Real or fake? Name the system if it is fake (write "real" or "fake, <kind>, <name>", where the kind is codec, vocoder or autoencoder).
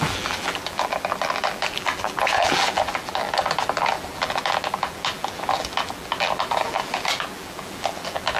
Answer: fake, vocoder, BigVGAN v2